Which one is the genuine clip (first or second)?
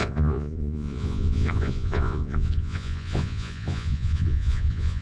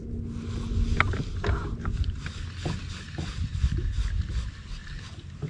second